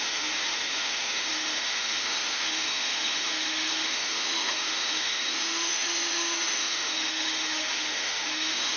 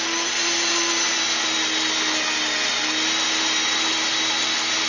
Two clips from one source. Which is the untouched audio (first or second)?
second